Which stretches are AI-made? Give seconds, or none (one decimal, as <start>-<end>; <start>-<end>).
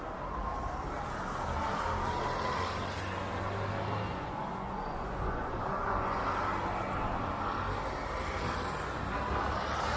4.1-6.2